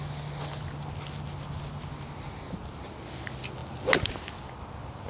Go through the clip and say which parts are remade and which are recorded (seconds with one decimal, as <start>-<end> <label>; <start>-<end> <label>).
0.0-5.1 recorded